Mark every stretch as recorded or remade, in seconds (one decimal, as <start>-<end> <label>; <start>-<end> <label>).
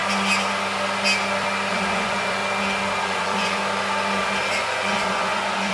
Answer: 0.0-1.7 recorded; 1.7-2.4 remade; 2.4-3.0 recorded; 3.0-3.6 remade; 3.6-4.5 recorded; 4.5-5.7 remade